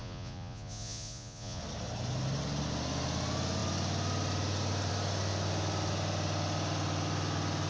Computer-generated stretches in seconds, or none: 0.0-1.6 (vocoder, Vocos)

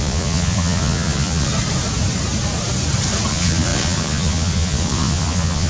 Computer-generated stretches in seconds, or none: 0.0-1.5 (vocoder, Vocos); 3.3-5.7

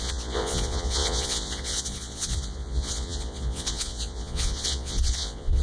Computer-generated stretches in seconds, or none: 0.0-5.6 (vocoder, Vocos)

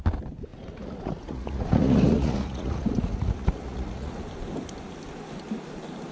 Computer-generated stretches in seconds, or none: 0.5-4.2 (vocoder, Vocos)

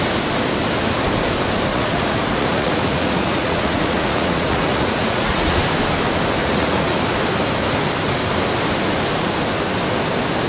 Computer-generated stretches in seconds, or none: 1.7-5.6 (vocoder, Vocos); 6.4-7.0

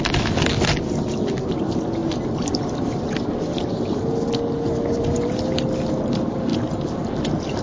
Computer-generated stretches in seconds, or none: none

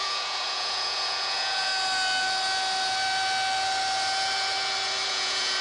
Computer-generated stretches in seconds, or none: 0.0-1.7 (vocoder, Vocos); 5.1-5.6